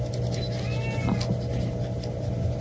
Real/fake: real